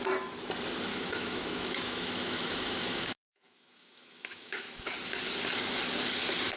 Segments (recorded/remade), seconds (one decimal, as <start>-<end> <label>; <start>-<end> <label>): 0.0-0.9 recorded; 0.9-4.9 remade; 4.9-6.6 recorded